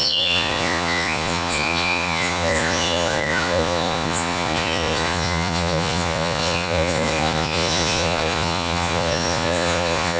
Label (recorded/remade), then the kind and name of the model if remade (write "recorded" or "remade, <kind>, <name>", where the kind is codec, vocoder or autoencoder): remade, vocoder, Vocos